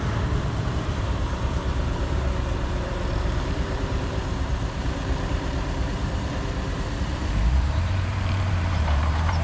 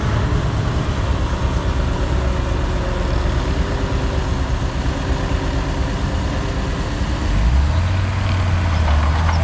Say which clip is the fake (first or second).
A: first